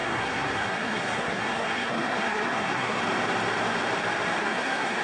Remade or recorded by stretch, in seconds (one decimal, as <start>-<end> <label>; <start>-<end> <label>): 0.0-3.0 remade; 3.0-4.4 recorded; 4.4-5.0 remade